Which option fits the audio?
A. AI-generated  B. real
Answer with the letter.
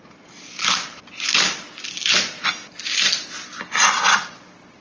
B